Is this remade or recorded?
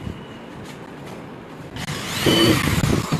recorded